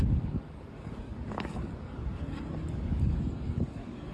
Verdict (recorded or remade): remade